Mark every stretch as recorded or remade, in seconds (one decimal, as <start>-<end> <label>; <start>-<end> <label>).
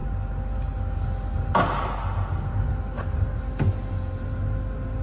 0.0-5.0 recorded